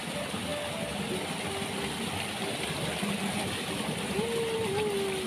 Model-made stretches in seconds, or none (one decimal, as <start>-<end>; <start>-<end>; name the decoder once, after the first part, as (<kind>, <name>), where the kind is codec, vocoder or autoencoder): none